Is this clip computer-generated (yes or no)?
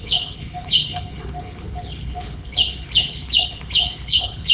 yes